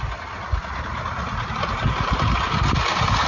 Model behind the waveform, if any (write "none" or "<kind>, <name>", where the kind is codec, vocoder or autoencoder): none